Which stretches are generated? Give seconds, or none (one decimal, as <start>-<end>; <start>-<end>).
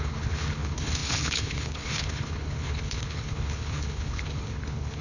0.0-5.0